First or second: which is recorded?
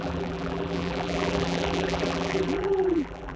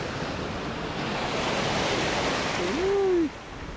second